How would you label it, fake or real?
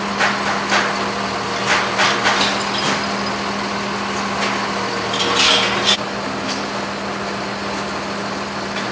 real